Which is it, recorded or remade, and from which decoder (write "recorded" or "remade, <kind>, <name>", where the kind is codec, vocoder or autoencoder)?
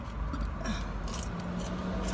recorded